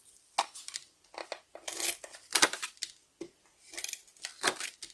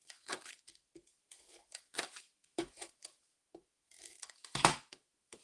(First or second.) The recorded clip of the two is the first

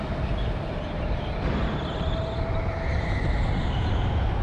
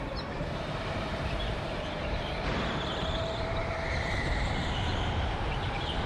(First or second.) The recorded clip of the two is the first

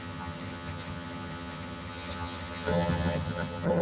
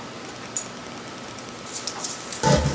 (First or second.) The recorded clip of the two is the second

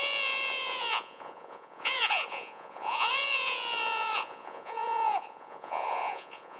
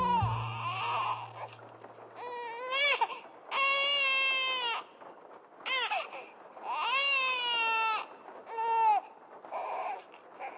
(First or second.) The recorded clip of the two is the second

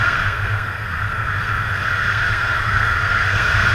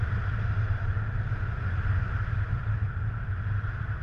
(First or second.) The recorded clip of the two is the second